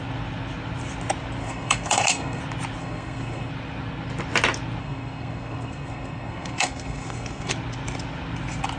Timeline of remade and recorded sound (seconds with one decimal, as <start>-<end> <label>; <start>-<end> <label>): 0.0-1.4 recorded; 1.4-2.4 remade; 2.4-2.8 recorded; 2.8-3.5 remade; 3.5-4.8 recorded; 4.8-7.5 remade; 7.5-8.8 recorded